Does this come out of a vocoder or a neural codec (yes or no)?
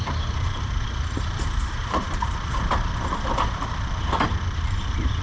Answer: yes